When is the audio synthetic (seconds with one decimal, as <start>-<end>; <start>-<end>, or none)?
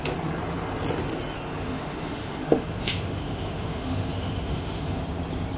1.6-5.0